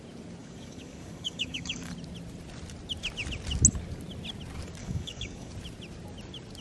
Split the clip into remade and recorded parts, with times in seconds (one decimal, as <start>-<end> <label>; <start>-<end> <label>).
0.0-0.4 recorded; 0.4-1.9 remade; 1.9-4.8 recorded; 4.8-5.5 remade; 5.5-6.6 recorded